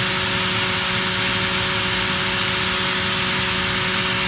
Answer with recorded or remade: recorded